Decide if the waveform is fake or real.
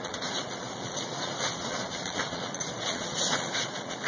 fake